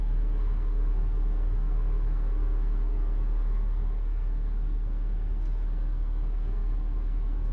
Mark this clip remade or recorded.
remade